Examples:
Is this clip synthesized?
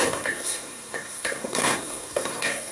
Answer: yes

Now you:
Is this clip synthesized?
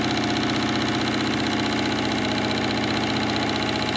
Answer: no